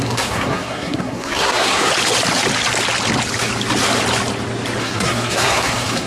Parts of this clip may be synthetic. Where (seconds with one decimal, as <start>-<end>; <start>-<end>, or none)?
0.0-1.9; 4.8-6.1